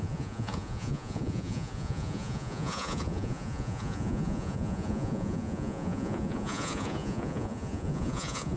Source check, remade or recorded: remade